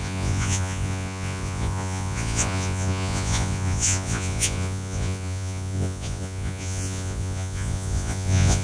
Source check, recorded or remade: remade